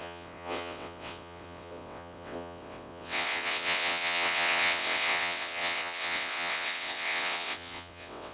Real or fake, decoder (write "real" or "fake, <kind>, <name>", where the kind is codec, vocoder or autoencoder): fake, vocoder, WaveNeXt